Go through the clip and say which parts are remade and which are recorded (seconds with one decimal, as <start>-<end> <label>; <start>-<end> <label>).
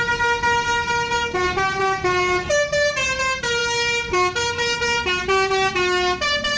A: 0.0-6.6 recorded